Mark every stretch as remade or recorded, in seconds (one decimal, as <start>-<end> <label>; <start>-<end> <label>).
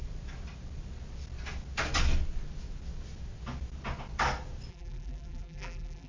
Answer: 0.0-4.7 recorded; 4.7-6.1 remade